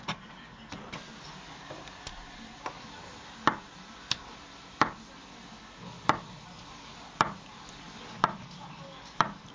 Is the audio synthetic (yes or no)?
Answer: no